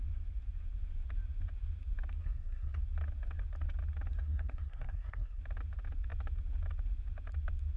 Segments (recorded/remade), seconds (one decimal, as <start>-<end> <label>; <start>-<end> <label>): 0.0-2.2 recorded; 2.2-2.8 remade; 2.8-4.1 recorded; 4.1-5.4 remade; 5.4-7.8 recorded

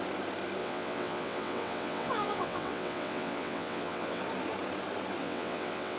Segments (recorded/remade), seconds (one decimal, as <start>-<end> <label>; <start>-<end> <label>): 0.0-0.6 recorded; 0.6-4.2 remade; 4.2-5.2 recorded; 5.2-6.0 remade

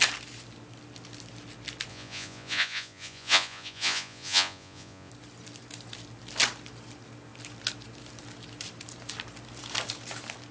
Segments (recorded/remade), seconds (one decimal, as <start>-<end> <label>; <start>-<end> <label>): 0.0-1.9 recorded; 1.9-5.1 remade; 5.1-10.5 recorded